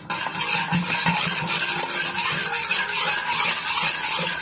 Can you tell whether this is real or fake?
real